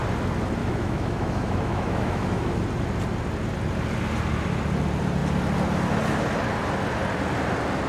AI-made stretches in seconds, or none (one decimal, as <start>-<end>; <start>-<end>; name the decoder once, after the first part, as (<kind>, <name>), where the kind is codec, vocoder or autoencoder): 0.6-2.6 (autoencoder, DAC-VAE)